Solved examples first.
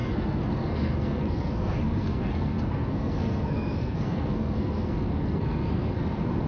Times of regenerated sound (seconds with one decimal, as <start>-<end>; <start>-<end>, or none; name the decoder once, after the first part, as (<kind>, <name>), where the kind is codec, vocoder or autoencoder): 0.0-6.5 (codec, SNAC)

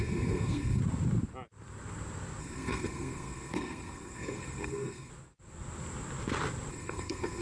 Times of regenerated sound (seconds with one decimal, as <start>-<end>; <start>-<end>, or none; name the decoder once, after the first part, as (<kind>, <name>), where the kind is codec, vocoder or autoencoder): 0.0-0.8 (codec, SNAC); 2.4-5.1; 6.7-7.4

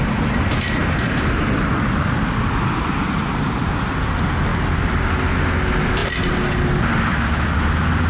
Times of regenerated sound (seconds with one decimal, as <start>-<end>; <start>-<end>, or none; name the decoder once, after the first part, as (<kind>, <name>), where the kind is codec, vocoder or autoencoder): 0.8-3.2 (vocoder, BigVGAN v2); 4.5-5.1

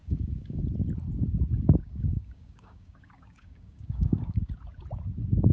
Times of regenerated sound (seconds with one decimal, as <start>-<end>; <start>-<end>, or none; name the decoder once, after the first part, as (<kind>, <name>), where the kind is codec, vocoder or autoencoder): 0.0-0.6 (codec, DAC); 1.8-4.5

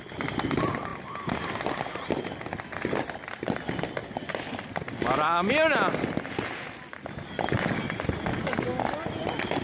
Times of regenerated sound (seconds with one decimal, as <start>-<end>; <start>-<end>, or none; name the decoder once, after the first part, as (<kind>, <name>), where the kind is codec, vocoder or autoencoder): 8.3-9.1 (codec, DAC)

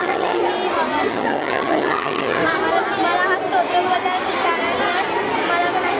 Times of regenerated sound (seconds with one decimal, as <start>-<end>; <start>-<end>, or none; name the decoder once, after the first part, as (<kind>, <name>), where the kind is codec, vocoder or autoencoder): 0.0-0.4 (vocoder, HiFi-GAN); 1.1-2.4